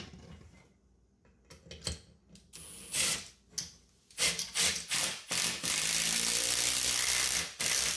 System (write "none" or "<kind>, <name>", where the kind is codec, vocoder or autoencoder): none